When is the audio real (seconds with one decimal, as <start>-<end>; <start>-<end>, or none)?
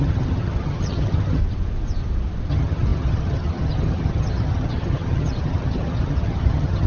1.4-2.5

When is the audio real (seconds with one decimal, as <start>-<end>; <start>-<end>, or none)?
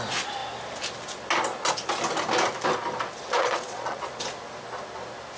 0.0-3.4; 4.0-5.4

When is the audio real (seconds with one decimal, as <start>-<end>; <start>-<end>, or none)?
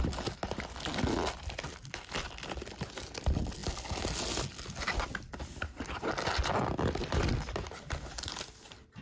0.0-9.0